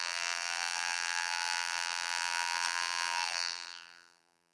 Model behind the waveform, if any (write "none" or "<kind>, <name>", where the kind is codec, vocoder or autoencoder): vocoder, BigVGAN v2